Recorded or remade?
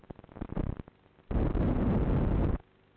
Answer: recorded